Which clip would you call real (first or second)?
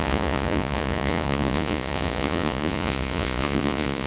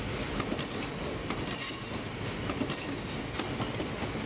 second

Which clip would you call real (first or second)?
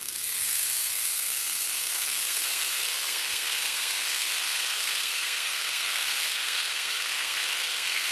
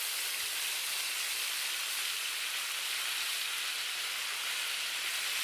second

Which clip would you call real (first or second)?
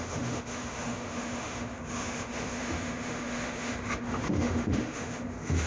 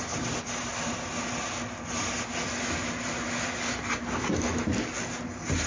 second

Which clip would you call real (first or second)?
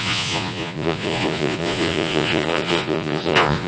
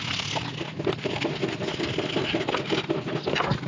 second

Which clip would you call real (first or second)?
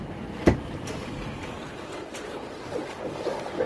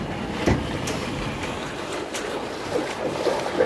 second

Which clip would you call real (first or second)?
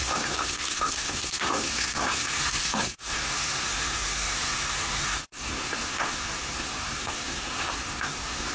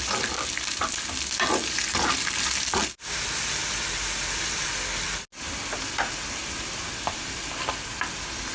second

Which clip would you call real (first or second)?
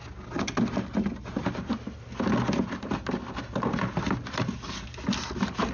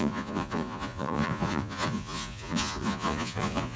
first